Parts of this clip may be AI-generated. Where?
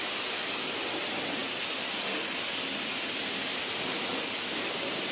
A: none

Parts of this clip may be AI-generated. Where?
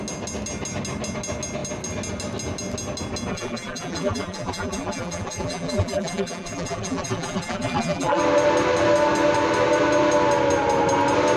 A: 3.3-8.2 (vocoder, BigVGAN v2)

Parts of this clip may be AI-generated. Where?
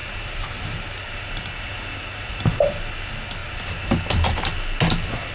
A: 0.0-2.3 (vocoder, BigVGAN v2); 3.4-4.0